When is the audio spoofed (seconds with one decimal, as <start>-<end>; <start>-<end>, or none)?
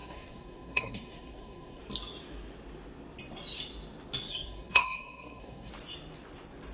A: 0.0-1.8; 4.3-5.7